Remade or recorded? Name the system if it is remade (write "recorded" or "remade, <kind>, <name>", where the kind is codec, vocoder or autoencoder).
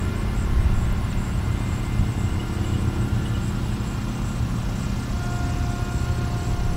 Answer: recorded